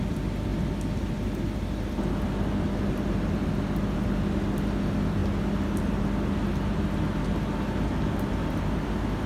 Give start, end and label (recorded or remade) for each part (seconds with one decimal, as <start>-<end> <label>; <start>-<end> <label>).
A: 0.0-9.3 recorded